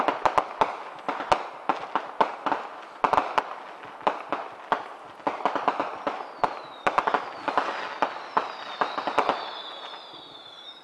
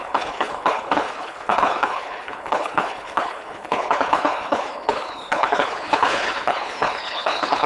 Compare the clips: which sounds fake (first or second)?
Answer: second